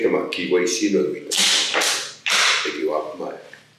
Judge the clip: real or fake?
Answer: real